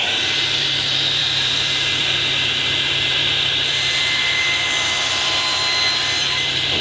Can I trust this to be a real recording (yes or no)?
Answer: no